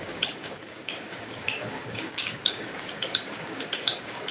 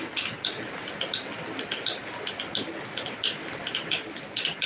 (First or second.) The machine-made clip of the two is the first